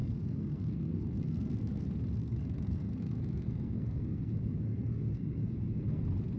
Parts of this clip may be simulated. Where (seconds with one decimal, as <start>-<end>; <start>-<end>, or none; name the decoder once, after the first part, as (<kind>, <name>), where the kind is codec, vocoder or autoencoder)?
0.0-1.8 (codec, SNAC); 2.2-6.0